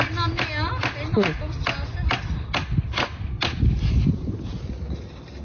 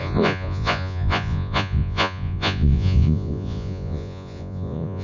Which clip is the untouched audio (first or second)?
first